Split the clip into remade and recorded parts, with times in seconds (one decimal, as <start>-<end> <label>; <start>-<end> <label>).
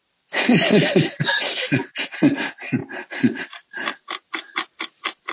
0.0-5.3 recorded